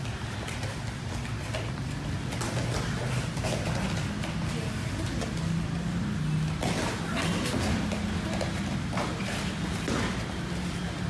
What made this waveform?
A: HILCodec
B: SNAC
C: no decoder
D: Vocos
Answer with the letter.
C